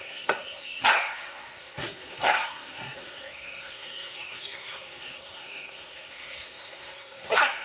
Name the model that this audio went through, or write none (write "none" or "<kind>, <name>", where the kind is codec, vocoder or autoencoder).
codec, SNAC